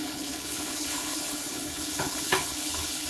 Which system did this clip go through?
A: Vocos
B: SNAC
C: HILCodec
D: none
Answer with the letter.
C